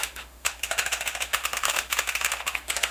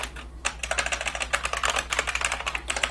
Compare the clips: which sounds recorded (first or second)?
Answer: second